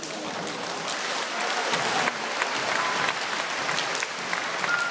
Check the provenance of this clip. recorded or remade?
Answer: recorded